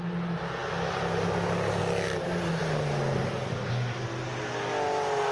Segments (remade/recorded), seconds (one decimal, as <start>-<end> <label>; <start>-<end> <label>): 0.0-5.3 recorded